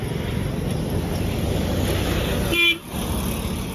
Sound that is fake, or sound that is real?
real